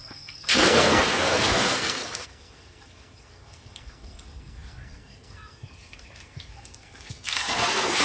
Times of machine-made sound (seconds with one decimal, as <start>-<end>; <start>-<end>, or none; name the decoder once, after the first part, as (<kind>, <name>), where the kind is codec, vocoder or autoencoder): 0.0-8.0 (codec, SNAC)